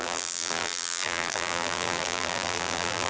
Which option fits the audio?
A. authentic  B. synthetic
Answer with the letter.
B